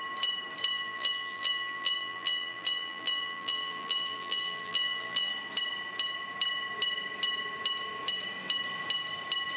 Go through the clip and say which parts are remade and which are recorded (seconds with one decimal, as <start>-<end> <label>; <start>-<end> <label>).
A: 0.0-0.7 recorded; 0.7-5.3 remade; 5.3-9.6 recorded